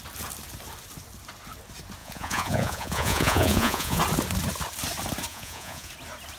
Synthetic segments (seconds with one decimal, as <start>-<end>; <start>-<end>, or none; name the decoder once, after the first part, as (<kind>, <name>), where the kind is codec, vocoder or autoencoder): 2.0-4.0 (vocoder, Vocos); 5.3-5.9